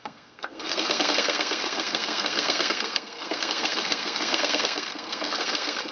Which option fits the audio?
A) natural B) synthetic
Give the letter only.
B